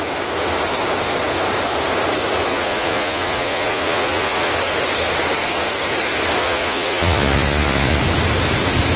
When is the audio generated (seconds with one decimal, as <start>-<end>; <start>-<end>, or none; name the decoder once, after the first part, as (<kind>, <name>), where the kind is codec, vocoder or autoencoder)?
2.5-4.5 (vocoder, Vocos); 6.4-8.0